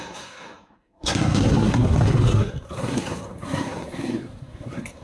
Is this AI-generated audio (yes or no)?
yes